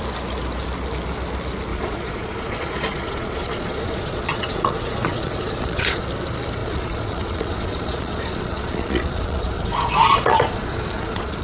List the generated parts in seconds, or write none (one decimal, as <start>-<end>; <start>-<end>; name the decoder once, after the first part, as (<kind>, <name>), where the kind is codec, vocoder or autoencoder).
1.7-6.0 (vocoder, Vocos); 6.6-11.4